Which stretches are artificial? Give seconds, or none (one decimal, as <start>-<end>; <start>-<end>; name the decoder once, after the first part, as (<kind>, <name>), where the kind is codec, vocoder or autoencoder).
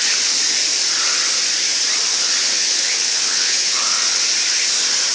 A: 2.1-4.2 (vocoder, WaveNeXt)